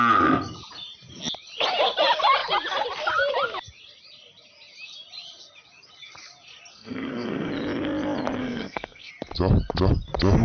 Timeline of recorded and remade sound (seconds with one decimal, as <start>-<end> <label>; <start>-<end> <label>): 0.0-6.7 recorded; 6.7-7.5 remade; 7.5-8.4 recorded; 8.4-9.1 remade; 9.1-10.4 recorded